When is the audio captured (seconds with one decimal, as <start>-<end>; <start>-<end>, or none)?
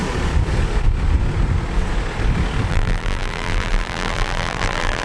0.0-2.7